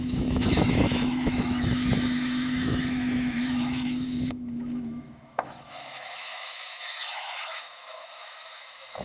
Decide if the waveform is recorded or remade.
remade